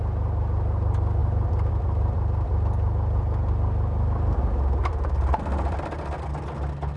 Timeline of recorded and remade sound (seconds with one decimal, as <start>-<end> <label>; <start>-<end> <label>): 0.0-7.0 recorded